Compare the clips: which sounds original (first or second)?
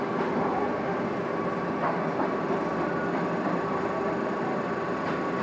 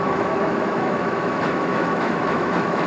first